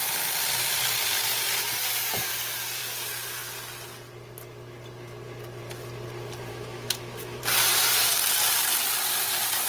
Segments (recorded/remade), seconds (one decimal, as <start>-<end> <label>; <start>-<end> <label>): 0.0-6.5 recorded; 6.5-7.4 remade; 7.4-9.7 recorded